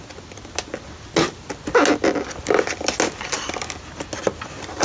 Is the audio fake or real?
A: real